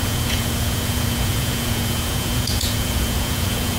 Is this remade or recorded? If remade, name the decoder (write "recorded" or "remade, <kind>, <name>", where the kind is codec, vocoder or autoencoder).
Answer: remade, vocoder, Vocos